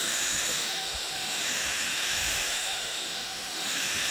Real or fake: fake